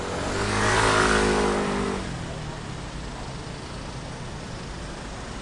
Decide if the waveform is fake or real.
real